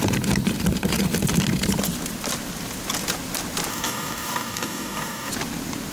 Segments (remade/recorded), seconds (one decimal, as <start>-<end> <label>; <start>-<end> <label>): 0.0-3.7 recorded; 3.7-5.3 remade; 5.3-5.9 recorded